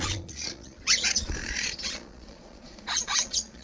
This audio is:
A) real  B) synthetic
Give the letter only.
B